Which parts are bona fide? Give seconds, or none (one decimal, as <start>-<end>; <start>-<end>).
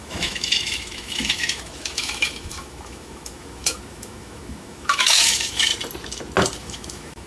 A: 5.7-6.6